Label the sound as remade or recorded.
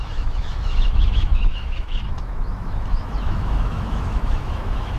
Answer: remade